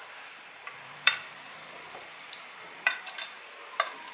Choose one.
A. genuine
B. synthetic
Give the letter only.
B